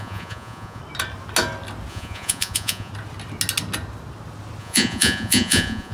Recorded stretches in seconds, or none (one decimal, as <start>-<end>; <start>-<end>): 0.8-1.9; 2.9-4.6